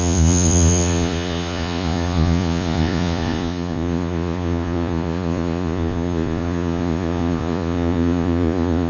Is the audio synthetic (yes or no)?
yes